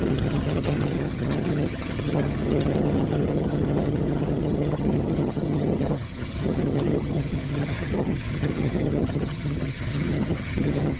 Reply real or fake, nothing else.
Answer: fake